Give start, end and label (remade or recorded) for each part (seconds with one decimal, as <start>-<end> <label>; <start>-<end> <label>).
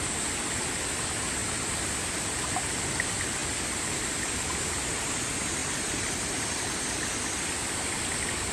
0.0-1.4 recorded; 1.4-2.5 remade; 2.5-5.6 recorded; 5.6-7.1 remade; 7.1-8.5 recorded